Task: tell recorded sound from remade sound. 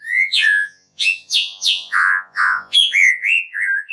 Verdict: remade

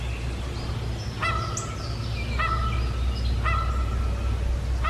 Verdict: recorded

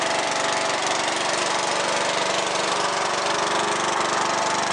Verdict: recorded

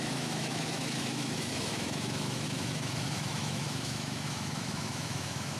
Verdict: remade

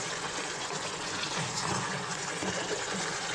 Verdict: remade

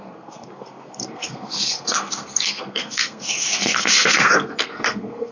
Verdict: remade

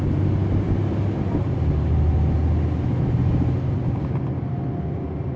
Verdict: recorded